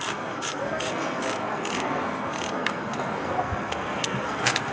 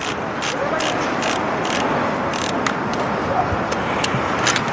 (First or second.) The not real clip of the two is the first